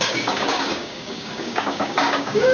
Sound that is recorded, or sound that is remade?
remade